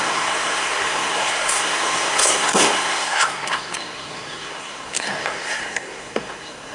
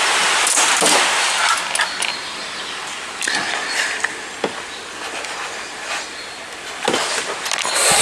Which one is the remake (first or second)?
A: first